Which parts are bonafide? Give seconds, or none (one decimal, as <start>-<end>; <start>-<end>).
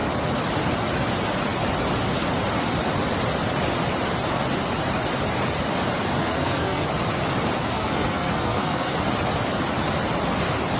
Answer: 0.0-6.2; 6.8-7.6; 8.9-10.8